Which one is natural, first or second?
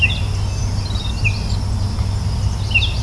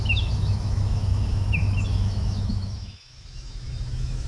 first